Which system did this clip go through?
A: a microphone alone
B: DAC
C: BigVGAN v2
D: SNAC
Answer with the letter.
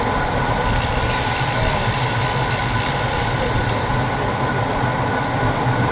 A